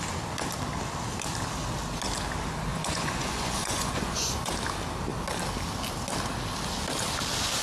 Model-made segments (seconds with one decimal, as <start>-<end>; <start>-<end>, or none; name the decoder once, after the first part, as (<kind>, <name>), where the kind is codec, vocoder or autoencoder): 2.7-4.5 (vocoder, Vocos)